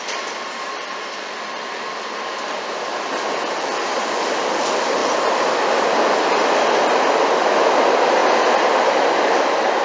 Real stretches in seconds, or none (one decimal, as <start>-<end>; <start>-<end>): 5.0-6.6